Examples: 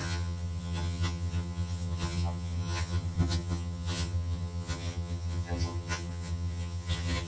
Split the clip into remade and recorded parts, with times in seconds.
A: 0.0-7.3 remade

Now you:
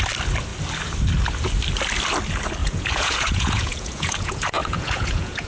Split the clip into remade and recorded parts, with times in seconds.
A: 0.0-2.6 recorded; 2.6-5.5 remade